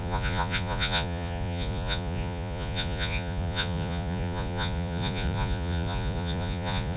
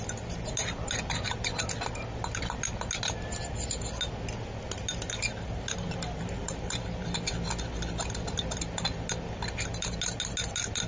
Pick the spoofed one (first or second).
first